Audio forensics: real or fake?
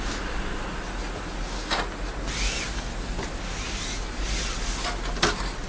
real